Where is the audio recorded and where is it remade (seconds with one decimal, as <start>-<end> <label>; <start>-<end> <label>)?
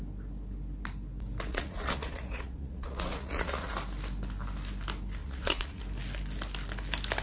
0.0-1.5 recorded; 1.5-3.7 remade; 3.7-5.2 recorded; 5.2-5.8 remade; 5.8-7.2 recorded